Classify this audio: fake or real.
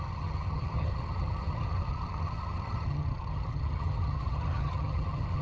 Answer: fake